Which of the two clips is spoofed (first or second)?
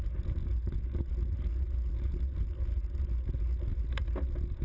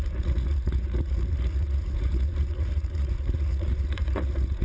second